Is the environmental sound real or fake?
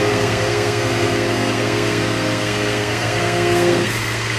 fake